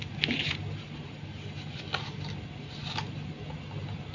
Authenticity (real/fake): real